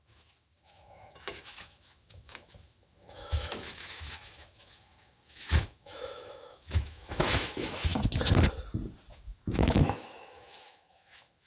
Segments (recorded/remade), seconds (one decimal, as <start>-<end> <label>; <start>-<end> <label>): 0.0-7.9 remade; 7.9-9.1 recorded; 9.1-11.5 remade